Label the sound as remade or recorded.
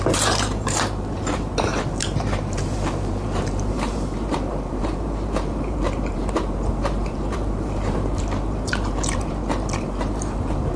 remade